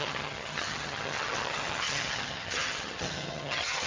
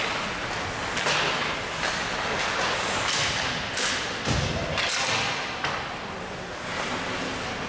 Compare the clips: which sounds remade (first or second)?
first